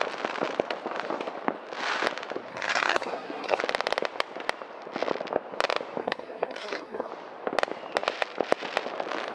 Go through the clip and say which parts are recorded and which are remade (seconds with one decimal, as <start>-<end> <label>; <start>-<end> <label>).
0.0-2.5 recorded; 2.5-3.6 remade; 3.6-6.0 recorded; 6.0-7.1 remade; 7.1-9.3 recorded